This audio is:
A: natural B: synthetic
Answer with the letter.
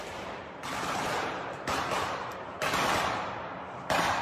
B